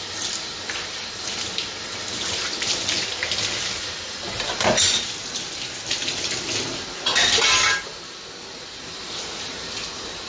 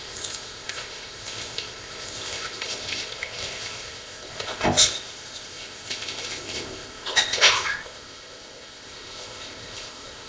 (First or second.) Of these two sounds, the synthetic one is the second